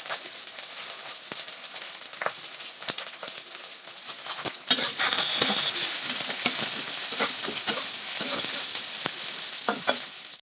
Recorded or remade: recorded